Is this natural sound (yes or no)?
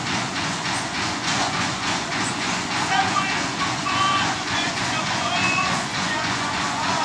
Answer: no